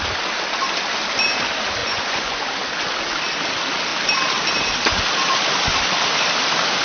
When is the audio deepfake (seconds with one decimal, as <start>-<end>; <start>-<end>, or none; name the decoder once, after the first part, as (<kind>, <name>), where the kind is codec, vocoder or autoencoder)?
1.8-2.4 (vocoder, Vocos)